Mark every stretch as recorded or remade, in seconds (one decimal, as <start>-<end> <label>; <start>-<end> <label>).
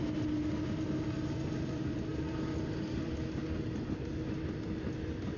0.0-5.4 recorded